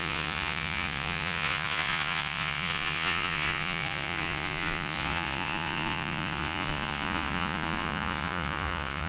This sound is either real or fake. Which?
fake